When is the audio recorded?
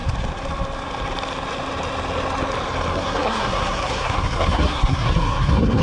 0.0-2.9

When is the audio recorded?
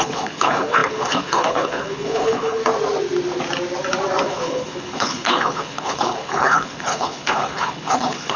2.6-4.2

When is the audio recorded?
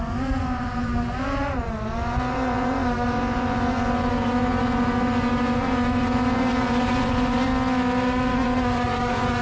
7.5-8.2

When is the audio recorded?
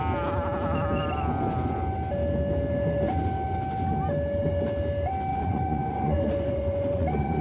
0.0-5.3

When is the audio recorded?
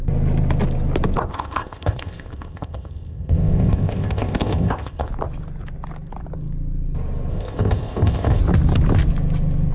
0.0-1.3; 5.1-7.3; 8.4-9.7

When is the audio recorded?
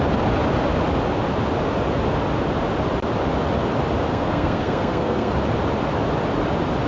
0.0-4.1; 5.3-6.9